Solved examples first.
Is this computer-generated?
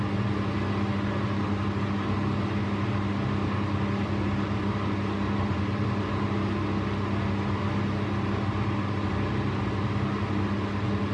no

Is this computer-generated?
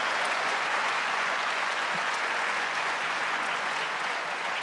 yes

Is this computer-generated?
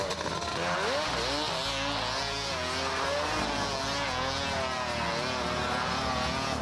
no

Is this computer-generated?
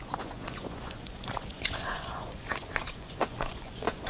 yes